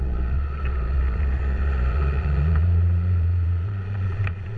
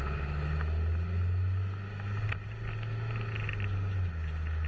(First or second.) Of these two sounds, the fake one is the first